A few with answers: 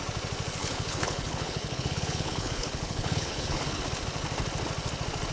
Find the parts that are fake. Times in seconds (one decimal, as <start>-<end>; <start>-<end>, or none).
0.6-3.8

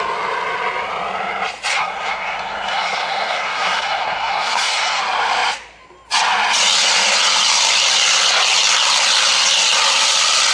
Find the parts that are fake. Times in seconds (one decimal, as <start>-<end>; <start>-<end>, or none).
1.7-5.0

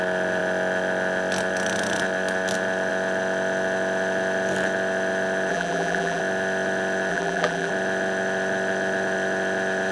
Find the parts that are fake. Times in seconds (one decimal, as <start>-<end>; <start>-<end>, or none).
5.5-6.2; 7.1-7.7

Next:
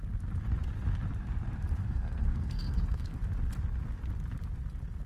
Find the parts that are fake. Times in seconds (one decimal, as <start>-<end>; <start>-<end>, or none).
1.8-3.2

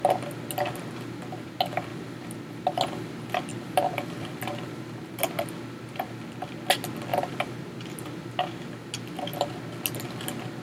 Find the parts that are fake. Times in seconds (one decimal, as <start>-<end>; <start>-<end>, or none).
1.9-2.5; 3.5-5.3; 7.1-8.3